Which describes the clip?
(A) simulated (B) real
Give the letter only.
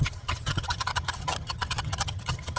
A